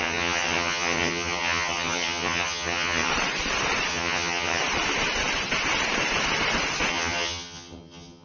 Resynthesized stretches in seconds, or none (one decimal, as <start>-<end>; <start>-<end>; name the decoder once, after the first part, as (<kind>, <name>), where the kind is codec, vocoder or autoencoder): 0.0-3.1 (vocoder, HiFi-GAN); 3.9-4.6; 6.9-8.2